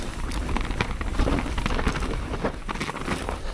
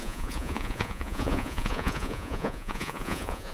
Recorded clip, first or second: first